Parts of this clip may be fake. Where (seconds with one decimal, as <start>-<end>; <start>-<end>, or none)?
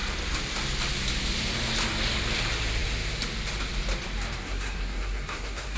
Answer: 4.4-5.8